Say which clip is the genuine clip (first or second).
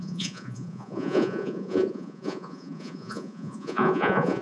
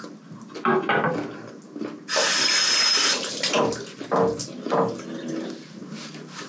second